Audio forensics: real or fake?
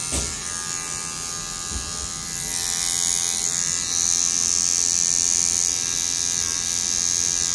real